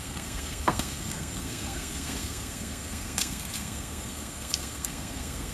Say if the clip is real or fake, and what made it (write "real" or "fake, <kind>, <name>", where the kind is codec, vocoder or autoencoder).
fake, codec, SNAC